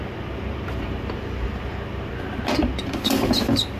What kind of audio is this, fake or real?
real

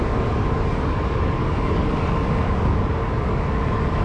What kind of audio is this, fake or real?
fake